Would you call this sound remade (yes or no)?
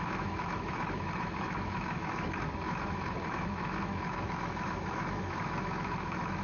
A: yes